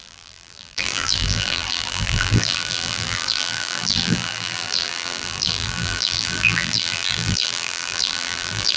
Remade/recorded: remade